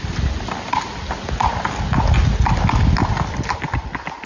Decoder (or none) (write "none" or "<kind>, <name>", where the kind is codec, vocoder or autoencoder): none